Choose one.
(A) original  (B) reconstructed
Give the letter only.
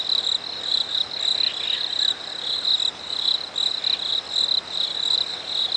A